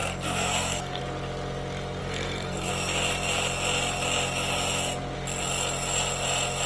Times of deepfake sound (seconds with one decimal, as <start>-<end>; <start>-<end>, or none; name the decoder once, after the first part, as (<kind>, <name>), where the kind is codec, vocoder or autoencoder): 0.0-1.0 (codec, SNAC); 2.0-2.7